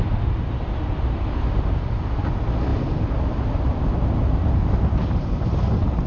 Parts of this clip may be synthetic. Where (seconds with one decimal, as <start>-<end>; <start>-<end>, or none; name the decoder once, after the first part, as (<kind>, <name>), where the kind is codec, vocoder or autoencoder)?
none